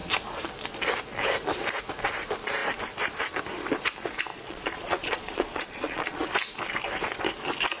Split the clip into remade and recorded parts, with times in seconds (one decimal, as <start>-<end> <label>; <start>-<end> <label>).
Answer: 0.0-4.3 recorded; 4.3-6.3 remade; 6.3-7.8 recorded